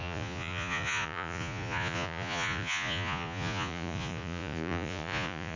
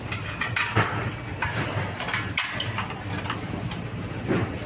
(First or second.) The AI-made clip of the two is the first